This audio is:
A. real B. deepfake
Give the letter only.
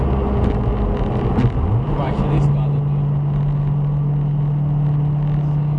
A